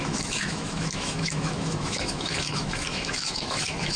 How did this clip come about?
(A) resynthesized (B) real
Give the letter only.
A